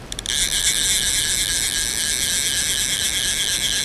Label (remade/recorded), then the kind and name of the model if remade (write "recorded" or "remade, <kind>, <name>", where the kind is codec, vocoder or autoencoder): recorded